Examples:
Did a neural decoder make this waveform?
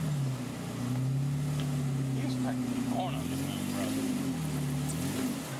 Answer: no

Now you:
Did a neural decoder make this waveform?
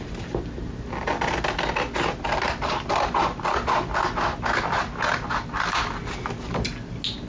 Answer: no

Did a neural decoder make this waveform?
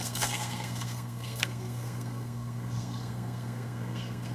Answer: yes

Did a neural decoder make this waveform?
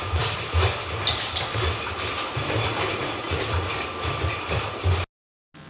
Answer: no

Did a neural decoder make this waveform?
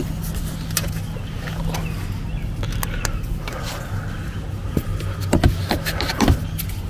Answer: no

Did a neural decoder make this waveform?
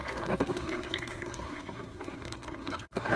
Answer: yes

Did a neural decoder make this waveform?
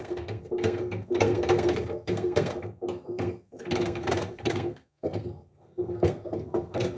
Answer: yes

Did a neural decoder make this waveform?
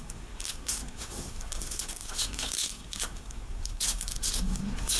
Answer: yes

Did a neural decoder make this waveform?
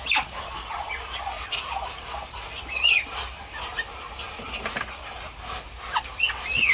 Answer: no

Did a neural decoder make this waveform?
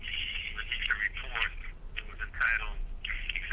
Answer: no